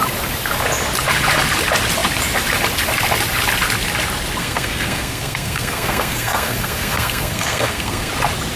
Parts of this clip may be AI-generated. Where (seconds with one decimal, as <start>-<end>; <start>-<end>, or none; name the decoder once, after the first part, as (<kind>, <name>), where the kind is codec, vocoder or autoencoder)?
4.4-8.1 (codec, SNAC)